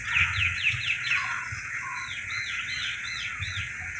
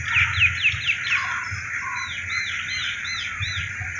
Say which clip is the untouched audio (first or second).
second